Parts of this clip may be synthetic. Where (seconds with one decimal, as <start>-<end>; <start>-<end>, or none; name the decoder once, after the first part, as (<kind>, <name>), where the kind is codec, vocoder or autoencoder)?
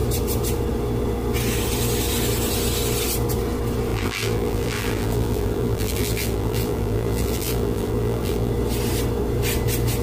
3.9-8.5 (vocoder, BigVGAN v2)